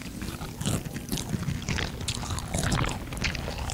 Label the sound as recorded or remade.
recorded